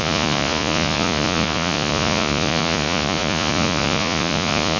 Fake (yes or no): yes